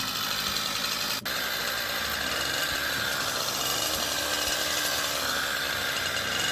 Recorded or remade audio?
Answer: recorded